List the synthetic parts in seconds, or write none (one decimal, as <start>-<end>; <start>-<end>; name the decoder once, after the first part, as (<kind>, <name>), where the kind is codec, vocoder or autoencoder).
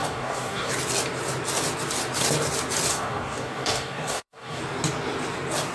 0.0-0.7 (codec, DAC); 2.9-4.6